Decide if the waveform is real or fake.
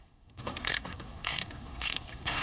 fake